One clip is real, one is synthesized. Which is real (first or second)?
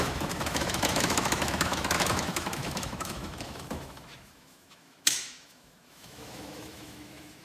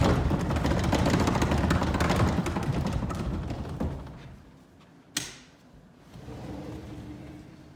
second